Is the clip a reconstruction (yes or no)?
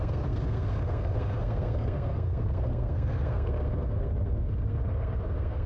yes